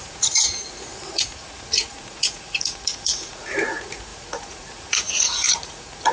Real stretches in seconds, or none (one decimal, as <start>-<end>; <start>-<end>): none